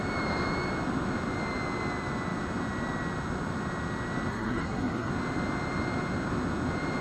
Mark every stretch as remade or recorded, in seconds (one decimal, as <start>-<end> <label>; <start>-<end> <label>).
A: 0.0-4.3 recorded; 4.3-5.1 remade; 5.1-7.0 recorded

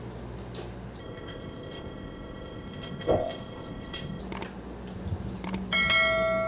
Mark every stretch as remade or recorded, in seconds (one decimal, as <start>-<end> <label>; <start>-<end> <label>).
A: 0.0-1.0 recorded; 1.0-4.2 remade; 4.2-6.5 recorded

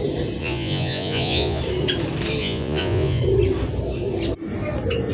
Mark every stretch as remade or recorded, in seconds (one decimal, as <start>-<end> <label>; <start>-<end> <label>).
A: 0.0-0.4 recorded; 0.4-1.6 remade; 1.6-2.4 recorded; 2.4-3.2 remade; 3.2-5.1 recorded